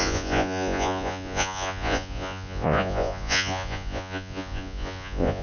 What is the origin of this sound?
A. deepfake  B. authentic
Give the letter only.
A